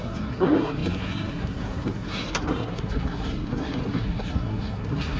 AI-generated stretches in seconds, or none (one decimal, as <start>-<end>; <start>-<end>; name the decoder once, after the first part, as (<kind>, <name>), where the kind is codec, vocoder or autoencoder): 0.0-5.2 (codec, SNAC)

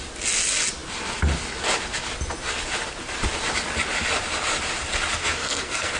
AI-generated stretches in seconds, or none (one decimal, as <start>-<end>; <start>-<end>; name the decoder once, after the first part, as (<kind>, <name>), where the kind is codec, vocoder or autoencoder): 5.2-6.0 (codec, SNAC)

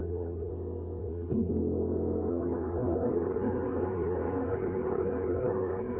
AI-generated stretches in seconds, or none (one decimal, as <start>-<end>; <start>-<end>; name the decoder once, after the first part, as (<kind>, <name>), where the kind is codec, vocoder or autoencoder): 0.0-0.5 (codec, SNAC); 1.0-1.5; 2.3-6.0

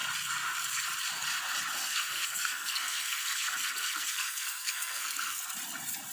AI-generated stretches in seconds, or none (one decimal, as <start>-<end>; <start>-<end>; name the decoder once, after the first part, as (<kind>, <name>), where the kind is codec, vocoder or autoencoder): 1.8-5.4 (codec, SNAC)

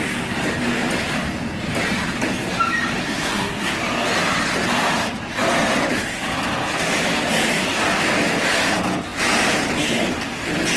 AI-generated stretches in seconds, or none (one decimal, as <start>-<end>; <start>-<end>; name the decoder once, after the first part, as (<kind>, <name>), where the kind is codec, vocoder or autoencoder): 3.0-3.7 (codec, SNAC)

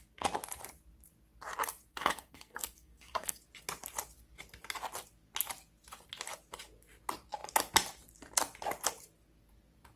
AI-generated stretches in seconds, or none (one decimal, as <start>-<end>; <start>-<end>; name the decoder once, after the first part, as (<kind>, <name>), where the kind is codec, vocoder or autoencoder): 1.9-3.4 (codec, SNAC)

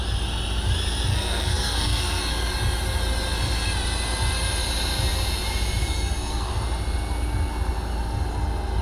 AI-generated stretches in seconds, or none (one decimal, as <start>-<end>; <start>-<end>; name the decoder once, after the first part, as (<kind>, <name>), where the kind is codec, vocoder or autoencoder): 1.1-2.2 (codec, SNAC); 5.8-6.5

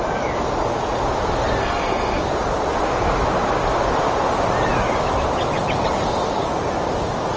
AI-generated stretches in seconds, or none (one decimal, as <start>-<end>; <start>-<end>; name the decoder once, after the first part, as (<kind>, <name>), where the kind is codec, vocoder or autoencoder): 1.6-2.2 (codec, SNAC)